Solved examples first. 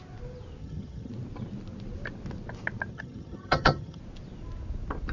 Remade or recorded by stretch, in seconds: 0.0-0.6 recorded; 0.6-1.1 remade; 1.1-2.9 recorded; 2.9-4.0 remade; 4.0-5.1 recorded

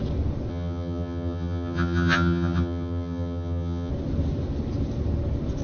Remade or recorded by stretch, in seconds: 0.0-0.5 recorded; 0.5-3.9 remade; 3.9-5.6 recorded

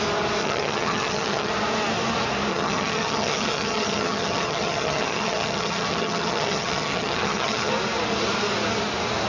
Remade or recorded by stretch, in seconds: 0.0-0.4 recorded; 0.4-1.5 remade; 1.5-2.5 recorded; 2.5-7.7 remade; 7.7-9.3 recorded

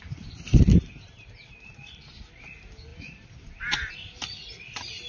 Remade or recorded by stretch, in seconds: 0.0-5.1 recorded

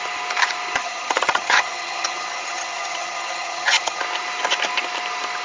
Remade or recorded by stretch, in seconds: 0.0-0.8 recorded; 0.8-4.0 remade; 4.0-5.4 recorded

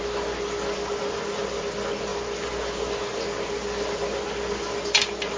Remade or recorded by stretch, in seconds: 0.0-5.4 recorded